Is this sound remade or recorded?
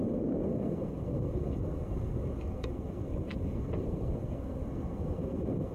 remade